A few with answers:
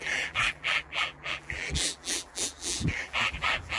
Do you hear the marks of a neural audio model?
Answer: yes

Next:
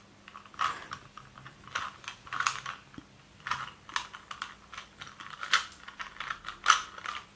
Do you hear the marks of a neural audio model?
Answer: no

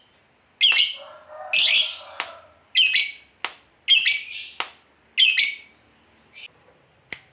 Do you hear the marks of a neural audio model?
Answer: no